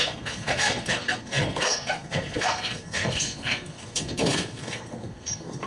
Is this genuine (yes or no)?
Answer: no